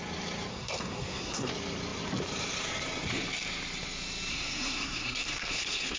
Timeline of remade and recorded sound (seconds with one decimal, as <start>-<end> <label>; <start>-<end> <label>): 0.0-0.5 recorded; 0.5-1.5 remade; 1.5-4.3 recorded; 4.3-6.0 remade